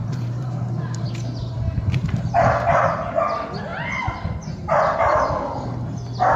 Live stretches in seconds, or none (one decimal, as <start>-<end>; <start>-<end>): 3.1-6.4